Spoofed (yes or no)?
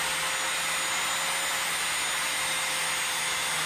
no